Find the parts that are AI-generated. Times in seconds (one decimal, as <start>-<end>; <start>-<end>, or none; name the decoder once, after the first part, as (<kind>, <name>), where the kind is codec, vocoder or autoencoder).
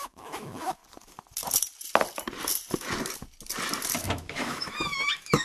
0.0-0.8 (autoencoder, DAC-VAE); 4.0-5.4